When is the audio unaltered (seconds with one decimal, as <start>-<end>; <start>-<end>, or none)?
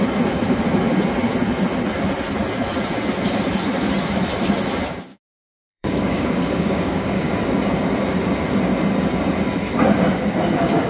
0.0-5.1; 7.3-10.9